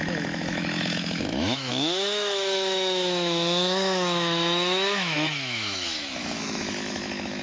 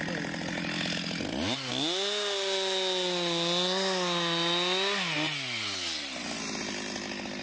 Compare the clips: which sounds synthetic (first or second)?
first